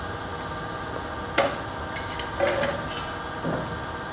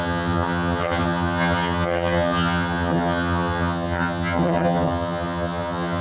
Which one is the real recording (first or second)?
first